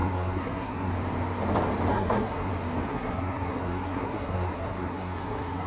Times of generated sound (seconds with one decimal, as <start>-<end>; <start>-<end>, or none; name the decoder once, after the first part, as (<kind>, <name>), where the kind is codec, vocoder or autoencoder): 0.0-0.9 (codec, SNAC); 1.9-2.5; 2.9-5.7